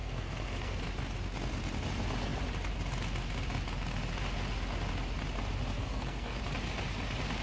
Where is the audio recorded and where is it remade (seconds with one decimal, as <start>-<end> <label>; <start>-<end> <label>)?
0.0-0.8 remade; 0.8-5.8 recorded; 5.8-6.4 remade; 6.4-7.4 recorded